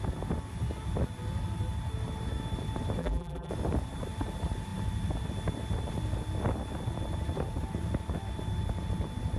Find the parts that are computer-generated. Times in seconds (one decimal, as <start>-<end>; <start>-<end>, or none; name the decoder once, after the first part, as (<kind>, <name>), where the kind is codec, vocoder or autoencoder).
3.0-3.5 (vocoder, BigVGAN v2)